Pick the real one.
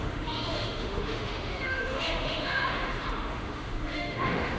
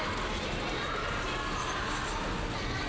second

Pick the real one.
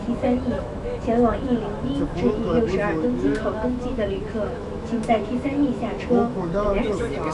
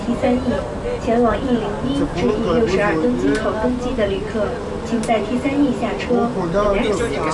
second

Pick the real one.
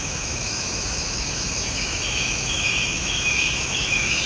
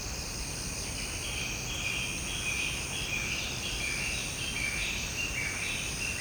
second